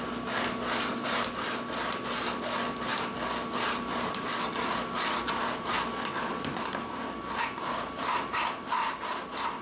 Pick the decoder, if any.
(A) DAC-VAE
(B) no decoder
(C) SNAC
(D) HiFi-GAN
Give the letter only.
B